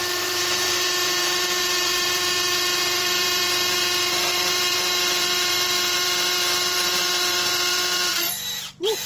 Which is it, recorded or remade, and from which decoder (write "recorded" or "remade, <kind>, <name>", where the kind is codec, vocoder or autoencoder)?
remade, vocoder, BigVGAN v2